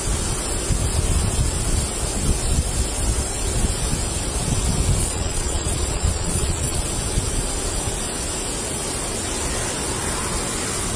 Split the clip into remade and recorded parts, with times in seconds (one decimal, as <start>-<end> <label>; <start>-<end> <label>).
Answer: 0.0-5.0 recorded; 5.0-6.8 remade; 6.8-11.0 recorded